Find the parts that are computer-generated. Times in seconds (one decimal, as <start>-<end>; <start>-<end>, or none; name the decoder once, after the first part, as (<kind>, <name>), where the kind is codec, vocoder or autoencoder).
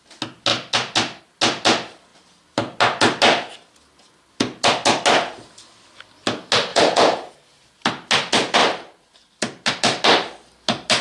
6.7-7.3 (vocoder, Vocos)